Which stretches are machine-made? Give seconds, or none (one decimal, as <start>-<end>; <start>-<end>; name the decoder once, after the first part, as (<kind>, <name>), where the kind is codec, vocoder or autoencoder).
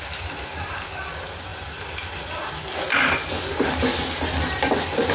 none